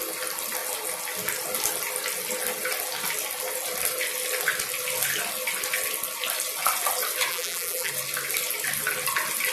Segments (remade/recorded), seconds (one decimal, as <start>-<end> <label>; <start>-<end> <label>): 0.0-7.3 recorded; 7.3-7.9 remade; 7.9-9.5 recorded